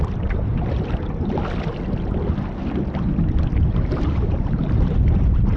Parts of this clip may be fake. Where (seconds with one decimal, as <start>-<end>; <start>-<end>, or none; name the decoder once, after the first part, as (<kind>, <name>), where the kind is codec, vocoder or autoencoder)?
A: 0.0-0.5 (vocoder, BigVGAN v2); 3.7-5.6